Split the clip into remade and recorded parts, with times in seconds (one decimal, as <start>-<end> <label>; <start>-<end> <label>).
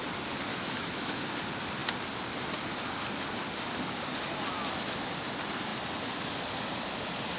0.0-0.5 recorded; 0.5-1.4 remade; 1.4-7.4 recorded